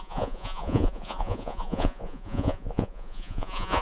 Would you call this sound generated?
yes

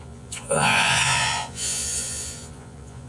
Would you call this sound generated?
yes